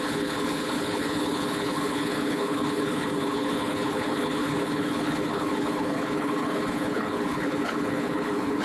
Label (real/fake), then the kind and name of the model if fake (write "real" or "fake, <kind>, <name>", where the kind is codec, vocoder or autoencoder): fake, codec, HILCodec